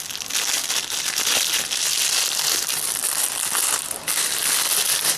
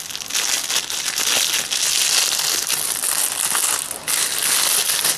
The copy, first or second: first